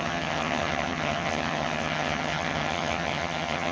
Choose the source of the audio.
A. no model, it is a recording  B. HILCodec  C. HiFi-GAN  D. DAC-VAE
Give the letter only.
C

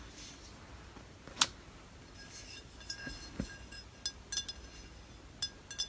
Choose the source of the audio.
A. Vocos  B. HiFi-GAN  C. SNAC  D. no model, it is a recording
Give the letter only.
D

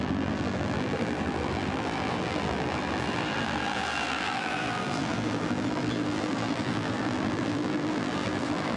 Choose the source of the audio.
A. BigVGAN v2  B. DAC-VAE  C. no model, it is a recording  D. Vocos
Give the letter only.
A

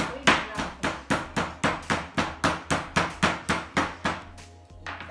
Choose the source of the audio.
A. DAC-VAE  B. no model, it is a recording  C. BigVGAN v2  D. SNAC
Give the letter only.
B